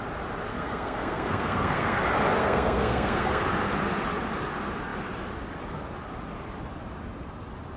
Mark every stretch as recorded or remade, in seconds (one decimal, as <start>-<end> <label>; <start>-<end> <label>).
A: 0.0-0.5 recorded; 0.5-2.0 remade; 2.0-2.4 recorded; 2.4-3.4 remade; 3.4-7.8 recorded